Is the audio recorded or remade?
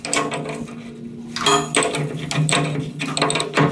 recorded